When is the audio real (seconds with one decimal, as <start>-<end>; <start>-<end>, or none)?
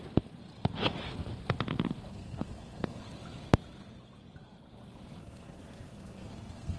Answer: 0.0-2.1; 3.0-5.2